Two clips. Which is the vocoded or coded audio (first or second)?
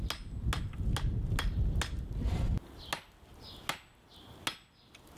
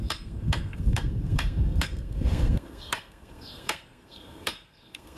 second